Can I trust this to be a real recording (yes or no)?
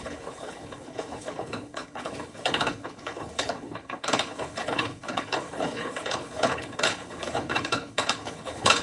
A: no